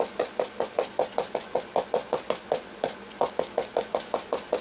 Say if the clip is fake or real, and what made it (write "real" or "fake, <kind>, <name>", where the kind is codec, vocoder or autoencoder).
fake, vocoder, Vocos